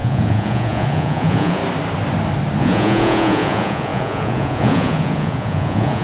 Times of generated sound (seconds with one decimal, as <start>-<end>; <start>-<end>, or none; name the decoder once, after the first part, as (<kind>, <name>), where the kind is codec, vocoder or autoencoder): 0.0-1.6 (vocoder, Vocos); 2.6-6.0